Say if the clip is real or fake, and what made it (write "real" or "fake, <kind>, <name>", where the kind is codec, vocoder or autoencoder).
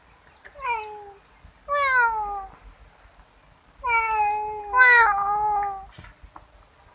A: real